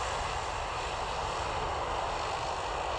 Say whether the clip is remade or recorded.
recorded